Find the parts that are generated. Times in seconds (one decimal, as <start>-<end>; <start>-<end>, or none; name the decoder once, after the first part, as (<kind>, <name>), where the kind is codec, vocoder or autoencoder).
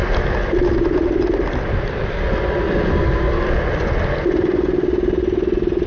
none